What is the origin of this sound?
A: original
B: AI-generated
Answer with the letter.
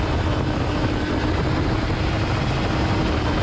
A